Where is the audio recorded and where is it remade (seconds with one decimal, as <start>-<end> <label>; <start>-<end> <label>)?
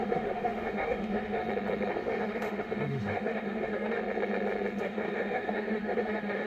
0.0-1.4 remade; 1.4-1.9 recorded; 1.9-4.0 remade; 4.0-4.8 recorded; 4.8-6.5 remade